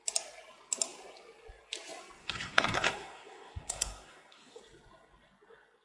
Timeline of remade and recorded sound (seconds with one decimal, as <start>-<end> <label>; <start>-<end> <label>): 0.0-2.2 recorded; 2.2-4.6 remade; 4.6-5.8 recorded